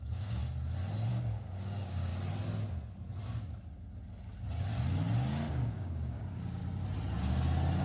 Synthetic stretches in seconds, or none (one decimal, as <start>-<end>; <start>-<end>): 0.0-0.4; 1.1-2.1; 5.5-6.6